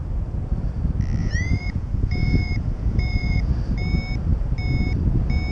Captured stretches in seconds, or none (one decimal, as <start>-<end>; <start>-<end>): 0.0-1.2; 3.5-5.5